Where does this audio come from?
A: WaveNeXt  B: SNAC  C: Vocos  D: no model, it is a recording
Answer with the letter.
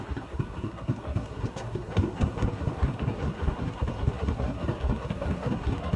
B